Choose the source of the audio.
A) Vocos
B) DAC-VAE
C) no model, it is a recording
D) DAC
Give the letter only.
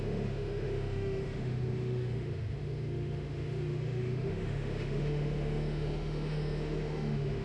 B